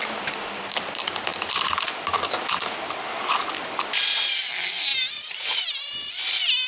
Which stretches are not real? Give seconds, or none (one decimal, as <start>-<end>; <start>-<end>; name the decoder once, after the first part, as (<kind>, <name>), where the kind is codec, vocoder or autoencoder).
none